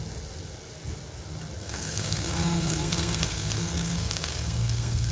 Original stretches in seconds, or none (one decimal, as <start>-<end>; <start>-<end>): 0.0-1.6